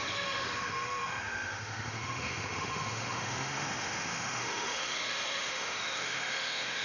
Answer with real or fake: fake